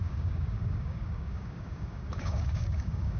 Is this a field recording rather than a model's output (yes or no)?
no